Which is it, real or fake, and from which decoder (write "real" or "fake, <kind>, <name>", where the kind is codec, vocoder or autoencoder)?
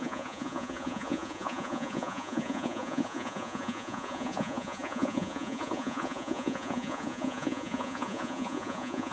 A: fake, vocoder, Vocos